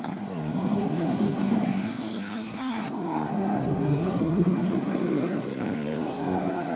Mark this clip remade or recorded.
remade